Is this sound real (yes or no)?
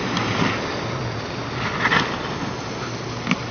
yes